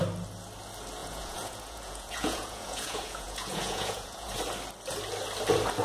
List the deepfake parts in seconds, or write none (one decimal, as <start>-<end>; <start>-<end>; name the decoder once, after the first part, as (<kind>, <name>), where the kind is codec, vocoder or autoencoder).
1.0-4.4 (vocoder, Vocos)